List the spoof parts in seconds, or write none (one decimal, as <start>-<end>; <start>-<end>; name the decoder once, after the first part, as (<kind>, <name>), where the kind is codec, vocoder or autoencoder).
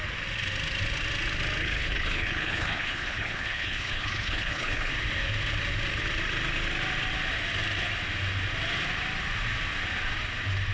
1.6-4.9 (codec, HILCodec)